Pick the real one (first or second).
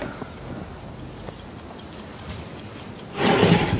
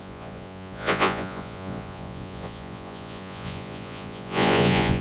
first